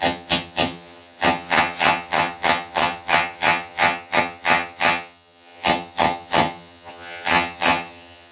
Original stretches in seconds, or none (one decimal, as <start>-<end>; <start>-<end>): none